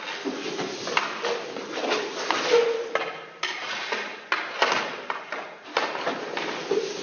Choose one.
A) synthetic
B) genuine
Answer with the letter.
B